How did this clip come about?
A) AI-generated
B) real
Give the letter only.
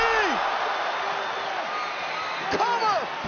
B